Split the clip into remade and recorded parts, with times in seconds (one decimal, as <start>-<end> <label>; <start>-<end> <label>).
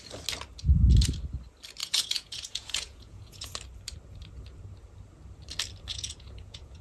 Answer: 0.0-1.8 recorded; 1.8-3.5 remade; 3.5-5.9 recorded; 5.9-6.8 remade